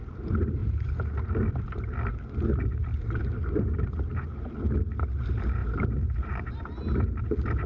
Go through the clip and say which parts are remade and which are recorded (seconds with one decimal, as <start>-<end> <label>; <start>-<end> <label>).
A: 0.0-2.9 recorded; 2.9-4.2 remade; 4.2-5.6 recorded; 5.6-6.5 remade; 6.5-7.7 recorded